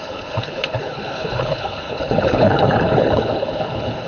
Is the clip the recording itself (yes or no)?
no